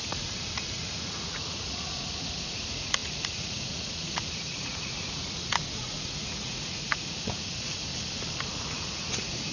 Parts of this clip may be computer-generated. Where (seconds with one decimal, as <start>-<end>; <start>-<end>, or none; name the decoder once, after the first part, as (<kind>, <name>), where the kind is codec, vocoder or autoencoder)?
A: 0.0-7.9 (vocoder, Vocos); 8.5-9.5